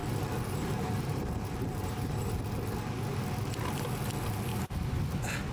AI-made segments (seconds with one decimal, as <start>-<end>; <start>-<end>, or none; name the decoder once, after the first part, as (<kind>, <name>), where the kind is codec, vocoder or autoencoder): 0.0-2.2 (vocoder, BigVGAN v2); 4.5-5.0